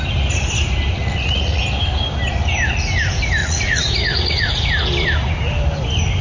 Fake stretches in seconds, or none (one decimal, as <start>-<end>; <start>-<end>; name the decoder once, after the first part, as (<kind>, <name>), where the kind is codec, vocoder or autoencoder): 1.0-1.6 (vocoder, Vocos); 3.4-4.7